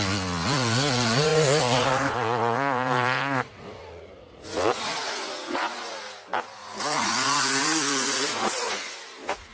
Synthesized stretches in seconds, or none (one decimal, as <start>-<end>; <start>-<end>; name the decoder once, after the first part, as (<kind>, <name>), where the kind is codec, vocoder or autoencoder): 0.0-9.5 (vocoder, Vocos)